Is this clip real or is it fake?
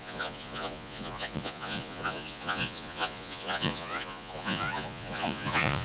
fake